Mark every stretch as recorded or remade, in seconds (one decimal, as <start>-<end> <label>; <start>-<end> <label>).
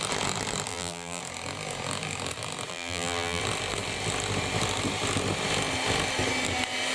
0.0-0.7 recorded; 0.7-1.2 remade; 1.2-2.7 recorded; 2.7-3.4 remade; 3.4-6.9 recorded